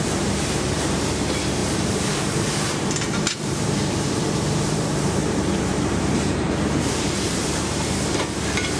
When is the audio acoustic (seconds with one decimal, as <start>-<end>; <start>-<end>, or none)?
none